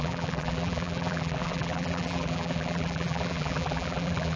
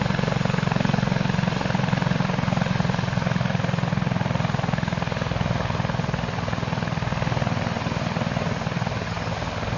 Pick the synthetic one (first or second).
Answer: first